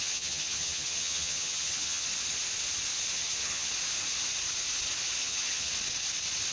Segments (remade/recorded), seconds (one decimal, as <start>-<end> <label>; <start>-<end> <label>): 0.0-2.1 remade; 2.1-3.1 recorded; 3.1-3.7 remade; 3.7-5.2 recorded; 5.2-5.7 remade; 5.7-6.5 recorded